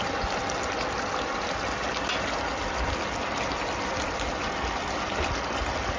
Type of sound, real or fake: real